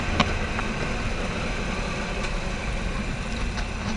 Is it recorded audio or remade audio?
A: recorded